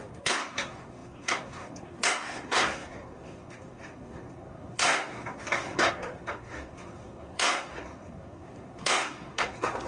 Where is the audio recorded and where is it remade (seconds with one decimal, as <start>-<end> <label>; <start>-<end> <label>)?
0.0-9.9 remade